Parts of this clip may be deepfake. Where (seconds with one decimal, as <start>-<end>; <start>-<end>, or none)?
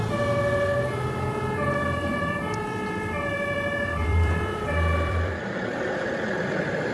1.8-5.9